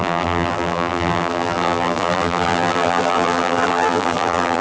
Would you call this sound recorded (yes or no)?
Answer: no